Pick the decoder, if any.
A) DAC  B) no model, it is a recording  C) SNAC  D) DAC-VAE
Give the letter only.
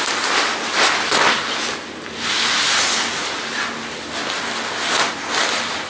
B